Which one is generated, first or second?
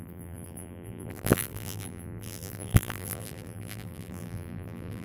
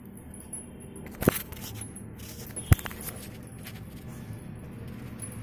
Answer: first